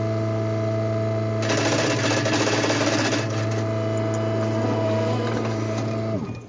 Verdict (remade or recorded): recorded